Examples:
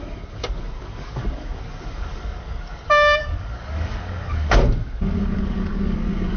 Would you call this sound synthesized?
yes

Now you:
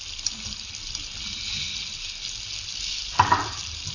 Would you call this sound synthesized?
no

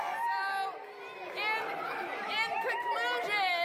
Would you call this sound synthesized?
no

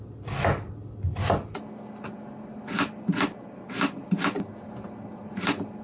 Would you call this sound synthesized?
no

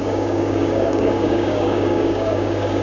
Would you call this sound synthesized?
yes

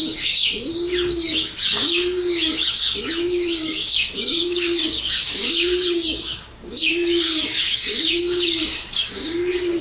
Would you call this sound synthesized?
yes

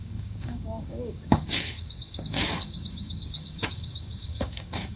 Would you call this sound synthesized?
yes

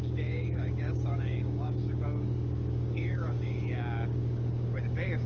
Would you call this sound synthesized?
yes